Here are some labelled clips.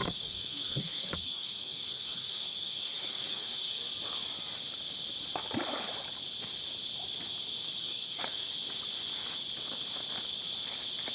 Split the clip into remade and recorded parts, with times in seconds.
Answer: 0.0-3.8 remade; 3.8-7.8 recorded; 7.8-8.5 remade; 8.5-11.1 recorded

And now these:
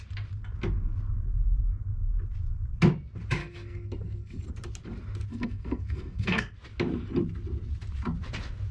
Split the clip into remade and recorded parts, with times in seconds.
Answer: 0.0-3.4 recorded; 3.4-4.4 remade; 4.4-5.3 recorded; 5.3-6.4 remade; 6.4-8.7 recorded

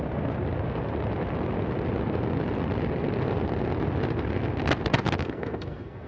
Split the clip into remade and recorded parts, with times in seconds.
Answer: 0.0-5.2 recorded; 5.2-6.1 remade

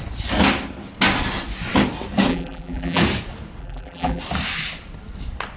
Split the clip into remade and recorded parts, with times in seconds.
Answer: 0.0-2.3 recorded; 2.3-3.0 remade; 3.0-3.6 recorded; 3.6-4.2 remade; 4.2-5.6 recorded

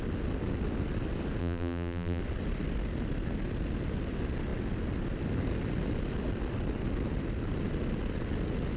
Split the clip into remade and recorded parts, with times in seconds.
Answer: 0.0-1.4 recorded; 1.4-2.2 remade; 2.2-8.8 recorded

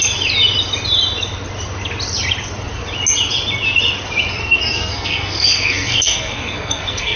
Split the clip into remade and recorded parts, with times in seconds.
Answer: 0.0-4.4 recorded; 4.4-7.2 remade

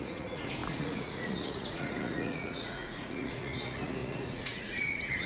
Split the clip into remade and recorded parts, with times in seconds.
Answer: 0.0-5.3 remade